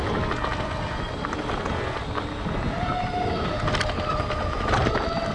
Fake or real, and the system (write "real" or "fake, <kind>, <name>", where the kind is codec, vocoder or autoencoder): real